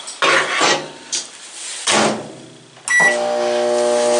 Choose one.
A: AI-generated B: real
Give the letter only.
B